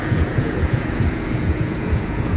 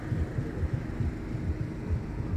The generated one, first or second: first